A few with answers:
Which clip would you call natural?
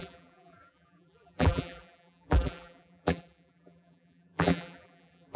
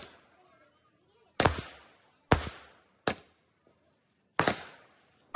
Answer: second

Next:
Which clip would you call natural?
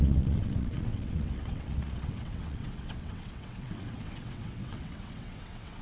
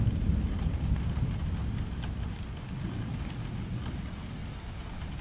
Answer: second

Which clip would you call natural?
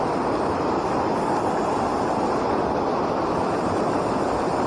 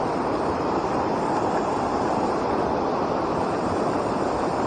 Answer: first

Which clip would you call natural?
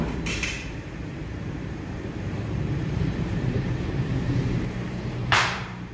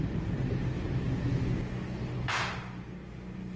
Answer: second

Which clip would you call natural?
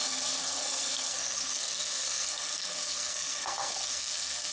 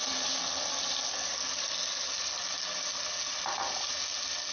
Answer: second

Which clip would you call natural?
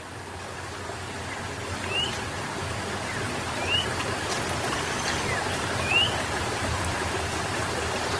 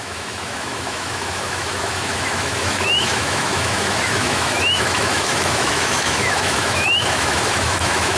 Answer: first